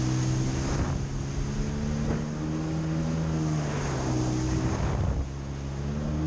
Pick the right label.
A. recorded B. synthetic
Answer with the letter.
A